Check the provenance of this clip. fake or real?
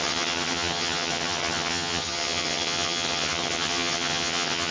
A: fake